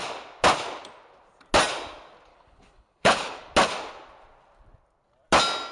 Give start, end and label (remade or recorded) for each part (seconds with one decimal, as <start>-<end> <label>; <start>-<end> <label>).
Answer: 0.0-2.3 recorded; 2.3-3.5 remade; 3.5-5.7 recorded